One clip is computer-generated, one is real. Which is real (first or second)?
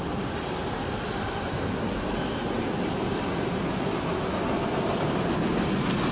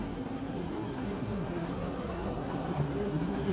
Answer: first